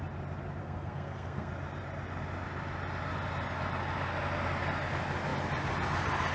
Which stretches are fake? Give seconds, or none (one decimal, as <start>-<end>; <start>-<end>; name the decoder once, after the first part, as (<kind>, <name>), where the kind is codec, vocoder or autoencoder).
0.6-1.5 (codec, SNAC)